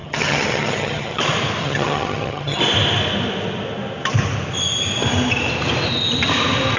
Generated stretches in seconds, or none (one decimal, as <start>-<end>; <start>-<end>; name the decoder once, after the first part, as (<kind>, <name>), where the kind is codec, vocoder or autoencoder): 0.0-1.2 (vocoder, HiFi-GAN); 1.6-2.6